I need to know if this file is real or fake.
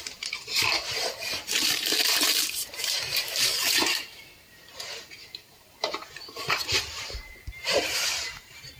fake